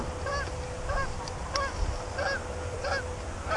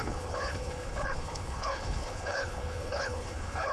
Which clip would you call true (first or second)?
first